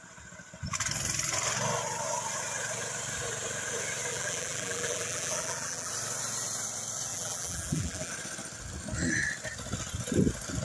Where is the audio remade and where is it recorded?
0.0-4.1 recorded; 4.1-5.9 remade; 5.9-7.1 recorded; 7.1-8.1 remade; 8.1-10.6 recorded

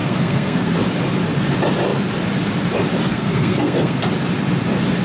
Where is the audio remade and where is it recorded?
0.0-0.7 remade; 0.7-3.1 recorded; 3.1-4.1 remade; 4.1-5.0 recorded

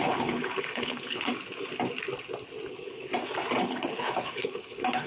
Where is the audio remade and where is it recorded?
0.0-1.3 remade; 1.3-2.7 recorded; 2.7-3.1 remade; 3.1-3.6 recorded; 3.6-5.1 remade